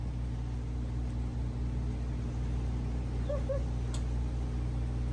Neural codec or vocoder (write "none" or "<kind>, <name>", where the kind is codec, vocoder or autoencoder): none